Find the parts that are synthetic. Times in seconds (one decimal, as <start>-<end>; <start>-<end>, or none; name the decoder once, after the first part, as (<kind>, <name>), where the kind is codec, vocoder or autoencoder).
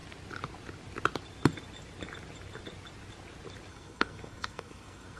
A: 3.7-5.2 (codec, SNAC)